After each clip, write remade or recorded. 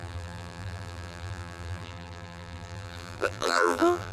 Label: remade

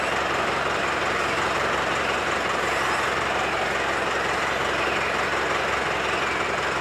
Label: recorded